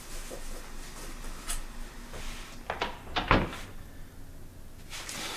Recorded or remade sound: recorded